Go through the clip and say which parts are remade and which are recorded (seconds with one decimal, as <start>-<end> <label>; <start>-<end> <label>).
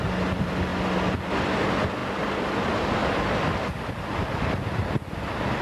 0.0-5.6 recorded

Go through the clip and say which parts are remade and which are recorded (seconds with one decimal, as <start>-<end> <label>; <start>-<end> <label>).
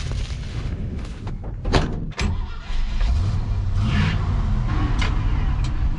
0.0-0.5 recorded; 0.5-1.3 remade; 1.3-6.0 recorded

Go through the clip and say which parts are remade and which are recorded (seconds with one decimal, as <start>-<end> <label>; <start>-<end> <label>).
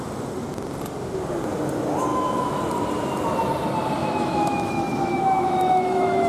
0.0-2.1 recorded; 2.1-2.6 remade; 2.6-4.0 recorded; 4.0-6.3 remade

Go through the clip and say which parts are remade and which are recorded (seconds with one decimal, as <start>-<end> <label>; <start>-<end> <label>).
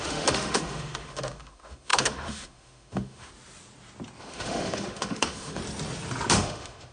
0.0-3.3 remade; 3.3-4.2 recorded; 4.2-5.6 remade; 5.6-6.3 recorded; 6.3-6.9 remade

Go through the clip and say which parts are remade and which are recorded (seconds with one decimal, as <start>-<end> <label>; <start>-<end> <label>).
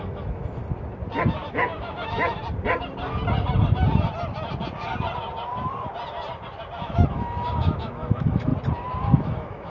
0.0-0.6 remade; 0.6-1.5 recorded; 1.5-2.4 remade; 2.4-6.8 recorded; 6.8-8.5 remade; 8.5-9.0 recorded; 9.0-9.7 remade